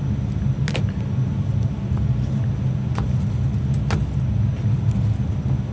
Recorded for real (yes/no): yes